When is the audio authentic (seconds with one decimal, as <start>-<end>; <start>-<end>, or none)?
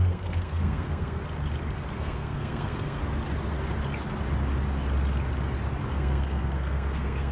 1.2-1.9; 3.0-5.9